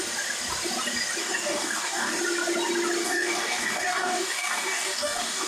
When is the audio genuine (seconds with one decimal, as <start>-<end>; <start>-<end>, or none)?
0.0-1.2; 2.2-3.0

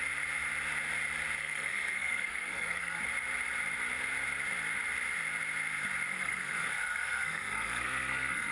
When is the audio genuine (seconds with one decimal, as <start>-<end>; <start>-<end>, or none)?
0.0-1.4; 3.0-6.1